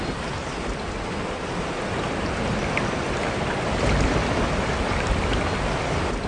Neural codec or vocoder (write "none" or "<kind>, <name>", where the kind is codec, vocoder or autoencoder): none